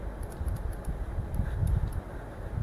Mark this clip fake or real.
real